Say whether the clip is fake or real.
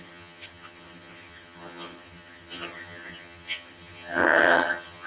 fake